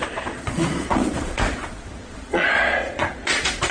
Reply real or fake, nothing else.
fake